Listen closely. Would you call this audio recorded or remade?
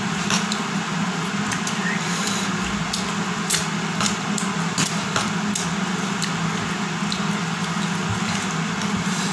recorded